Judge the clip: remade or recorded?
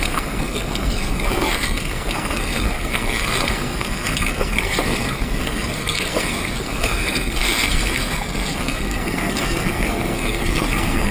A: remade